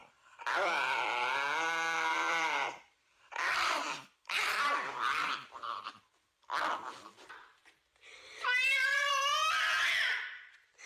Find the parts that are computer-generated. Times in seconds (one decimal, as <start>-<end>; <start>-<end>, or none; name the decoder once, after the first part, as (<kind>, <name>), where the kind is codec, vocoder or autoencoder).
0.0-1.3 (vocoder, BigVGAN v2); 2.1-5.9; 7.6-9.1